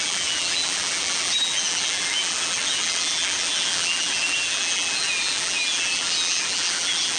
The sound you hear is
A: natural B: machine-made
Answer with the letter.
B